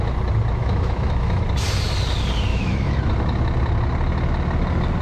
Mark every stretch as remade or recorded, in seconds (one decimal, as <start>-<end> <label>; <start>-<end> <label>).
0.0-0.6 recorded; 0.6-1.4 remade; 1.4-2.5 recorded; 2.5-3.0 remade; 3.0-5.0 recorded